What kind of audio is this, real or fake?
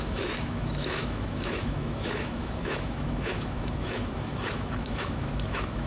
fake